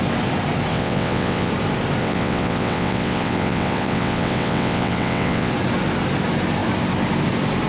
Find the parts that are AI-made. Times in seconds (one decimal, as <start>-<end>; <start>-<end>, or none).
0.7-1.5; 2.0-5.5